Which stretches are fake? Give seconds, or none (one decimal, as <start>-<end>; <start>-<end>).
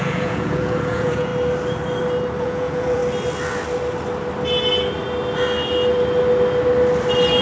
0.0-1.3; 2.4-3.0